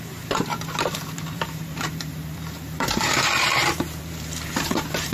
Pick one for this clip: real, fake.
fake